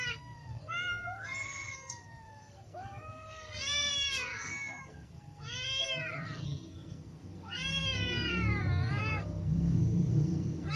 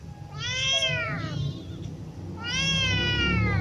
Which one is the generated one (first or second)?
first